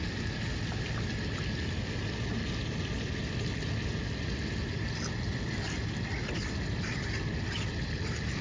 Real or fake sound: real